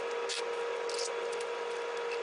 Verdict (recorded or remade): recorded